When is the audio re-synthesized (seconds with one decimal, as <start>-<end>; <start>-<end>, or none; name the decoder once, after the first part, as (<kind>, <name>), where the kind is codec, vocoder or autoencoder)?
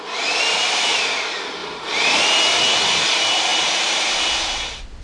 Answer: 1.6-2.2 (vocoder, BigVGAN v2); 3.5-4.6